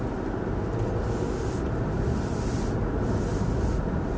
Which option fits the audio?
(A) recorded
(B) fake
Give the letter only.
A